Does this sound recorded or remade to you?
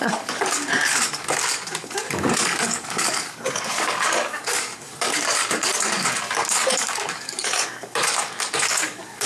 remade